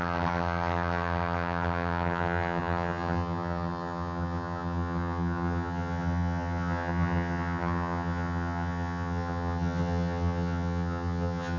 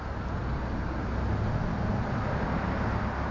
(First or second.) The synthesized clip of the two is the first